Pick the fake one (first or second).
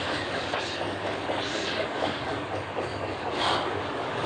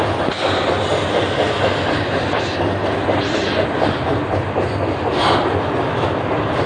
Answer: first